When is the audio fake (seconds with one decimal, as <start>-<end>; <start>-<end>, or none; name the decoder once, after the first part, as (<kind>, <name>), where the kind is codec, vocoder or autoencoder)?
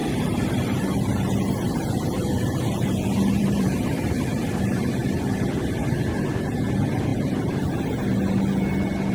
0.0-4.9 (vocoder, BigVGAN v2)